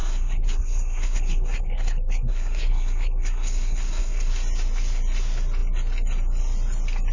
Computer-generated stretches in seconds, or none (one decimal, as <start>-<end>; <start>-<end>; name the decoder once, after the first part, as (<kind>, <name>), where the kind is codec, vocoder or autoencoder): 0.0-4.3 (codec, SNAC)